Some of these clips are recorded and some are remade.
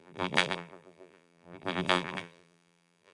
remade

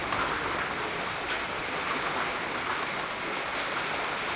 recorded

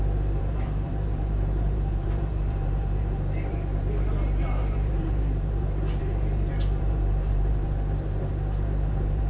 remade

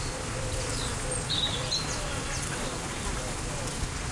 remade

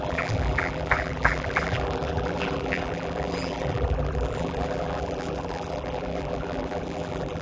remade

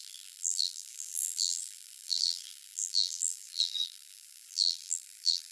remade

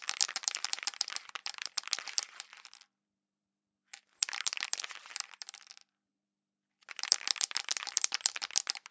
remade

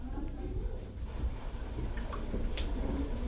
remade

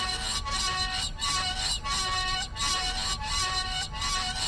recorded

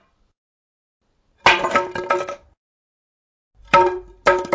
recorded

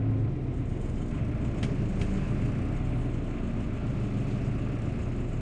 recorded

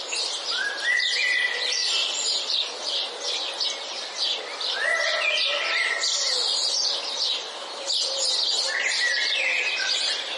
remade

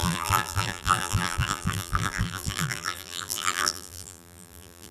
remade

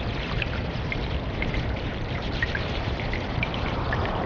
remade